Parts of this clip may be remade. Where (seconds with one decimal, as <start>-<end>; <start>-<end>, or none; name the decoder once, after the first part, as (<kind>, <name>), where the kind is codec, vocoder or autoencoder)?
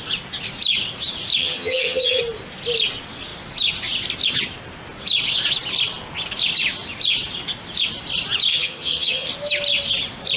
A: 1.4-2.2 (vocoder, HiFi-GAN); 8.5-9.3